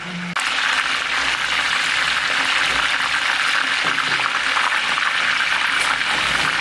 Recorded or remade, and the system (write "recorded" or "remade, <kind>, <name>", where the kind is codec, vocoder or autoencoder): recorded